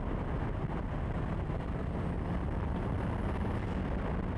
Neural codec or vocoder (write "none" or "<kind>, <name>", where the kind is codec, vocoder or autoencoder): none